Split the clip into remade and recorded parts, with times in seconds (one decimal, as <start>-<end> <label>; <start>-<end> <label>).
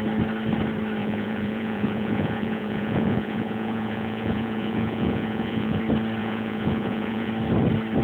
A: 0.0-1.0 recorded; 1.0-5.8 remade; 5.8-6.2 recorded; 6.2-7.3 remade; 7.3-8.0 recorded